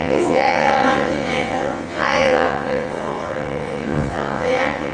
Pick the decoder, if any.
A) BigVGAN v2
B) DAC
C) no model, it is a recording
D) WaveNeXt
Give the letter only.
D